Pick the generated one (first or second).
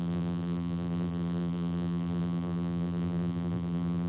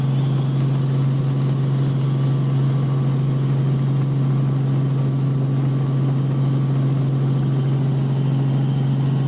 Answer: first